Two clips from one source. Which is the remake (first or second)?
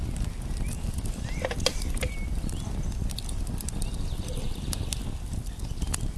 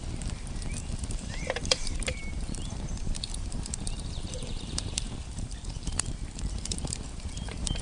second